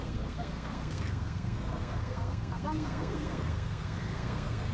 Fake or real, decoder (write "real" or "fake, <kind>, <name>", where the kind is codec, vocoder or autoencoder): fake, codec, SNAC